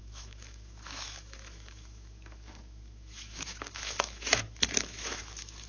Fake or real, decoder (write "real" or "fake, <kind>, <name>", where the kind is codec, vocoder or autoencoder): fake, autoencoder, DAC-VAE